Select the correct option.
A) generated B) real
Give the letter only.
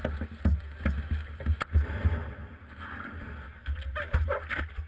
B